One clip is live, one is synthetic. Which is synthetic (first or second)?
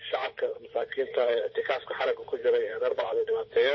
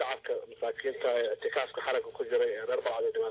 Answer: first